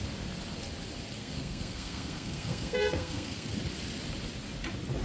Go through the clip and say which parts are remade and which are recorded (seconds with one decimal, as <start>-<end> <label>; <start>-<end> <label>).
0.0-1.2 recorded; 1.2-3.5 remade; 3.5-5.0 recorded